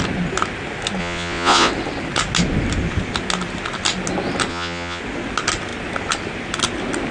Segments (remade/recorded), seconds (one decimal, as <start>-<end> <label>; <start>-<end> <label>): 0.0-1.0 recorded; 1.0-1.7 remade; 1.7-4.5 recorded; 4.5-5.0 remade; 5.0-7.1 recorded